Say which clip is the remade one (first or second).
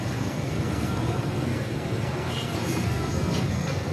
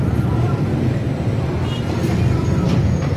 first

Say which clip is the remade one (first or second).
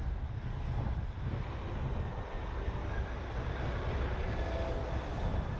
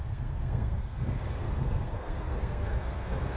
second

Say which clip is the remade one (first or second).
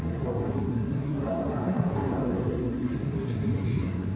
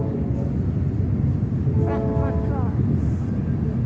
first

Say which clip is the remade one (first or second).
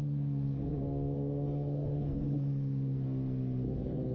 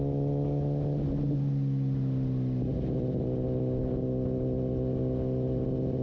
first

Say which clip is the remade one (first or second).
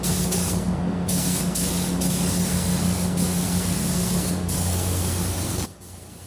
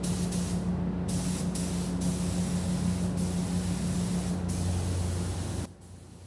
first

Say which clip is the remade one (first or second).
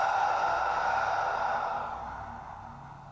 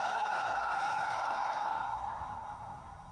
second